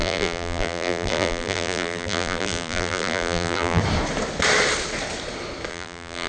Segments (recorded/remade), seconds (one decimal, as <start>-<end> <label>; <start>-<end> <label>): 0.0-3.8 remade; 3.8-5.7 recorded; 5.7-6.3 remade